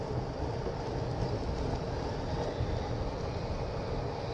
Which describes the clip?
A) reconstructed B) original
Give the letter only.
B